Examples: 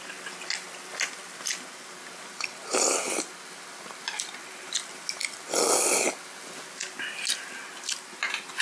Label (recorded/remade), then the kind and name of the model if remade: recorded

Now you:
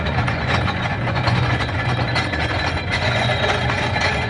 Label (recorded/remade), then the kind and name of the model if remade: remade, vocoder, Vocos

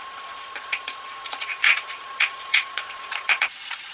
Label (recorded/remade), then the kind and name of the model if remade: remade, vocoder, Vocos